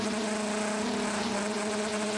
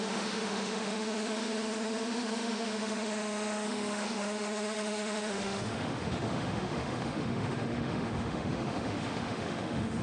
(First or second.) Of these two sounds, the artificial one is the second